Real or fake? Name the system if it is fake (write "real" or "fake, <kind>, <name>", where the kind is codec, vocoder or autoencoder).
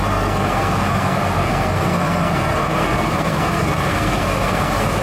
fake, codec, SNAC